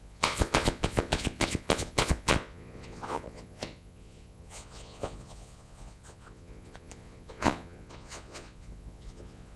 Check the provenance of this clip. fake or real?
fake